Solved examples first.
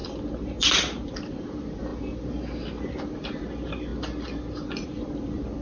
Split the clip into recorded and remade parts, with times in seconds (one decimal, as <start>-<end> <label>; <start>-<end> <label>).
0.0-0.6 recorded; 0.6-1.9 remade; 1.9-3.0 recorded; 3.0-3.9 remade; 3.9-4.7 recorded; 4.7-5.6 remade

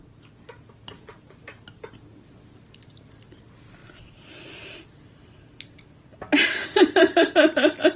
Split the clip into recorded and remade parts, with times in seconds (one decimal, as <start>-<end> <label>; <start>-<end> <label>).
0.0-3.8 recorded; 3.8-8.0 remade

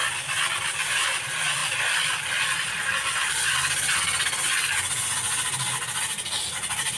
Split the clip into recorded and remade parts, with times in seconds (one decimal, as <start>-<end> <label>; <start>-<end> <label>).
0.0-1.6 recorded; 1.6-3.5 remade; 3.5-7.0 recorded

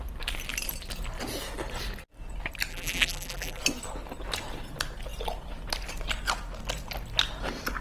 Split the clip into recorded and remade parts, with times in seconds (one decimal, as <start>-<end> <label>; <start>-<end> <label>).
0.0-2.7 recorded; 2.7-3.6 remade; 3.6-7.8 recorded